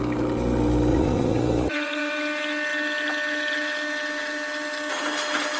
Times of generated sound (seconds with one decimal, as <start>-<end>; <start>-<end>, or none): 0.9-2.1

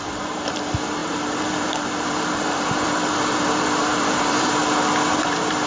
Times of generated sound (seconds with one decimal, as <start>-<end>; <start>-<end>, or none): 0.0-4.6; 5.2-5.7